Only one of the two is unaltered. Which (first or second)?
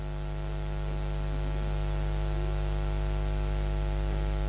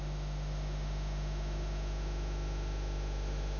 first